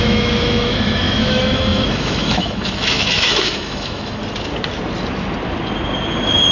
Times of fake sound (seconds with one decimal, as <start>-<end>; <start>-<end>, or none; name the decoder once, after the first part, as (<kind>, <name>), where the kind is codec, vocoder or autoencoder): 0.0-4.2 (autoencoder, DAC-VAE)